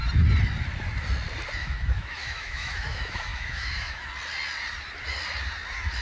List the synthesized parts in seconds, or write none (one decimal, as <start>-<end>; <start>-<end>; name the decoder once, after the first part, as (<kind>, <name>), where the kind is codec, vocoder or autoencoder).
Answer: 1.6-4.1 (autoencoder, DAC-VAE)